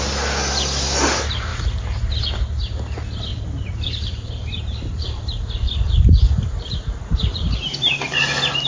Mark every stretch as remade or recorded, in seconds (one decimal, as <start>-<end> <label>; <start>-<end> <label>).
0.0-1.5 recorded; 1.5-2.0 remade; 2.0-3.3 recorded; 3.3-8.2 remade; 8.2-8.7 recorded